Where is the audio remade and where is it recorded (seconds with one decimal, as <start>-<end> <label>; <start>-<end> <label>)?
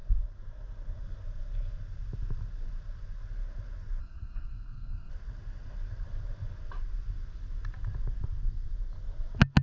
0.0-4.0 recorded; 4.0-5.1 remade; 5.1-9.6 recorded